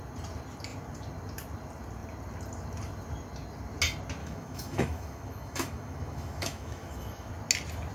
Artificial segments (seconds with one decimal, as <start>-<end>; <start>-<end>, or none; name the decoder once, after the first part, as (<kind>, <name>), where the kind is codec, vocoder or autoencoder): 4.2-7.3 (autoencoder, DAC-VAE)